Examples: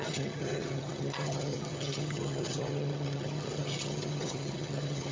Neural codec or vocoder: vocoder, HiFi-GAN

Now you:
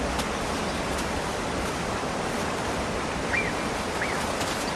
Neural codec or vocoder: none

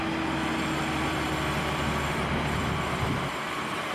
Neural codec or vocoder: none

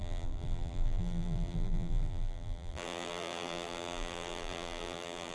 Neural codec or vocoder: vocoder, BigVGAN v2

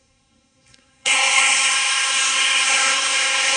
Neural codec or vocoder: codec, SNAC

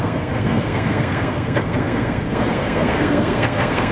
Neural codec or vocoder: codec, SNAC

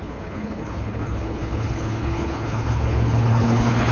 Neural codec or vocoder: codec, HILCodec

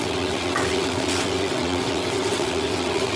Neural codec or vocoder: vocoder, WaveNeXt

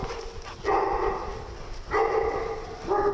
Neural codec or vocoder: none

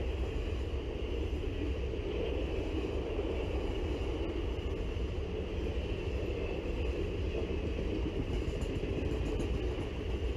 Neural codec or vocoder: none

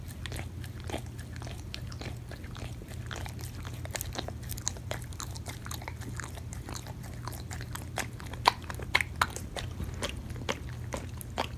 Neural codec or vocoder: none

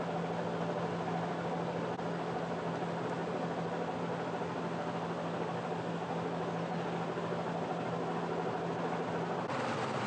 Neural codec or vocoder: none